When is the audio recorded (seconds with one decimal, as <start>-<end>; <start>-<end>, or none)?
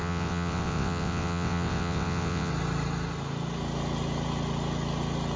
2.5-5.4